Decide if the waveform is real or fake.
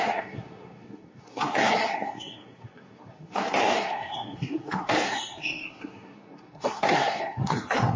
fake